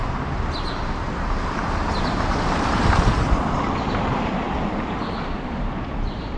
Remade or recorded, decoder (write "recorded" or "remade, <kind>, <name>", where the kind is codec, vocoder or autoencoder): remade, vocoder, BigVGAN v2